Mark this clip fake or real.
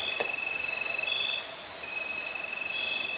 real